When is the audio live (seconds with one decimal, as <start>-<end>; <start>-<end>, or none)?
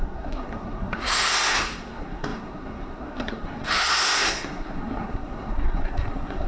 none